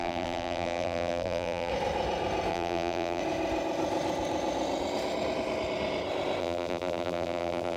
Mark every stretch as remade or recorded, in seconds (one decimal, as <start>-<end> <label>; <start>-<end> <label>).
0.0-1.7 remade; 1.7-2.5 recorded; 2.5-3.2 remade; 3.2-6.4 recorded; 6.4-7.8 remade